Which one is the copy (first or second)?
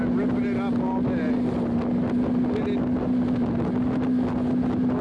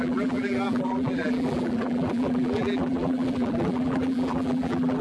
second